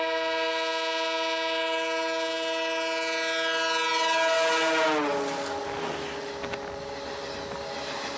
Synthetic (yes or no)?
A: no